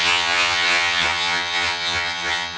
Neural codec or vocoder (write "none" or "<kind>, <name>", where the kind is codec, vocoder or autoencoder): vocoder, HiFi-GAN